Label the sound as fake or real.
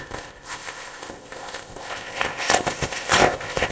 fake